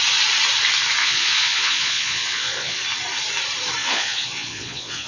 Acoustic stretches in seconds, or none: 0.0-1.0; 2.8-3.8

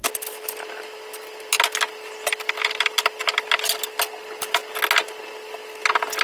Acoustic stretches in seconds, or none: 0.0-6.2

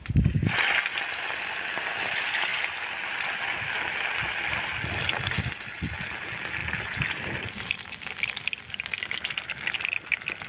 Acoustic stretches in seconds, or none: 0.0-10.5

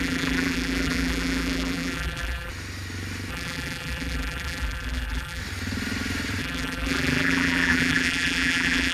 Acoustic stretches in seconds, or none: 2.5-3.3; 5.4-6.4

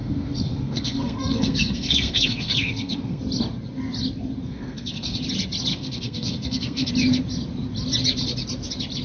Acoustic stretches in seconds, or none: 3.2-4.4; 5.2-5.7; 6.9-9.0

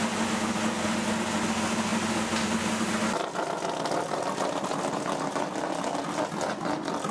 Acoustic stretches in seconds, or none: 0.0-7.1